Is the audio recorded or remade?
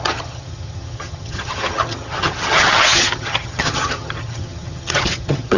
remade